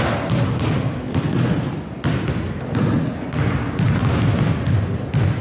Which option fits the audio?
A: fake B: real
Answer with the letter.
B